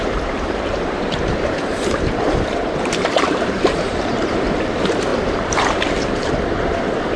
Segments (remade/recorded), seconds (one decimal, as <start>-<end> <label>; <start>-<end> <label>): 0.0-7.2 remade